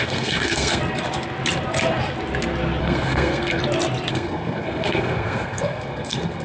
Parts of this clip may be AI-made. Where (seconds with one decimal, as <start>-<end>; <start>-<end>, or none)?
0.0-0.8; 2.8-3.6; 4.1-6.4